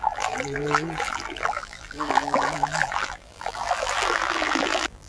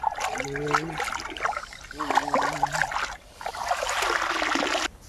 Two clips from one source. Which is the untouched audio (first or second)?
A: second